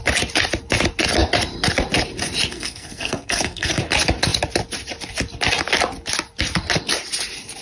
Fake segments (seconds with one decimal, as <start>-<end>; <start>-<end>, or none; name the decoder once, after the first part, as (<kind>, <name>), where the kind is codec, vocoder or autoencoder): 2.5-3.8 (codec, SNAC)